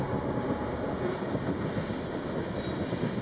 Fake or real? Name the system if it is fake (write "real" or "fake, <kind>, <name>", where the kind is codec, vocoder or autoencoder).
real